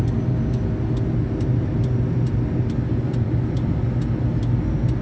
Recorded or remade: recorded